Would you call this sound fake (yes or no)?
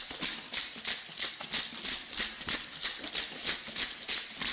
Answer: no